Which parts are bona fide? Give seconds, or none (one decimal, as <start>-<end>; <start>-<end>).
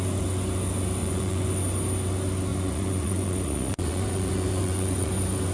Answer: 0.0-1.0; 1.5-2.5; 5.1-5.5